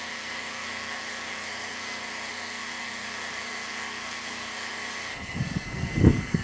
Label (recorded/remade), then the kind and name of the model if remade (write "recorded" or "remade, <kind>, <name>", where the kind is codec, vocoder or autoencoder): remade, codec, SNAC